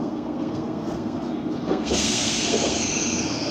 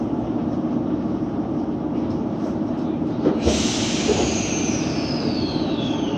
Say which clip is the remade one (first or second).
first